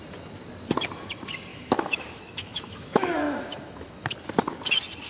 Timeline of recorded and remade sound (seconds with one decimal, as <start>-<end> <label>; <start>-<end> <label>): 0.0-1.5 recorded; 1.5-4.1 remade; 4.1-5.1 recorded